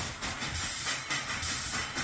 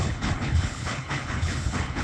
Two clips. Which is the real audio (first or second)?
first